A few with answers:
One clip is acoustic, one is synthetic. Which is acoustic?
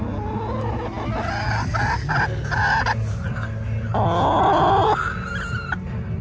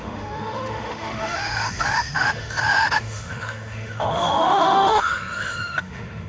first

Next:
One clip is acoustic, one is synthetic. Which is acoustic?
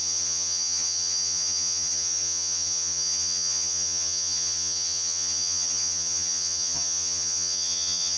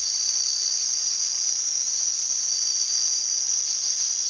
second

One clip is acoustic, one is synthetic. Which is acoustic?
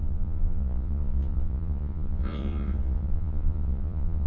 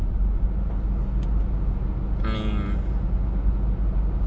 second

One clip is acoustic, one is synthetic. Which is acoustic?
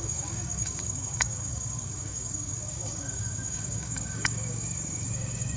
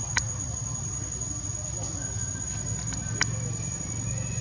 second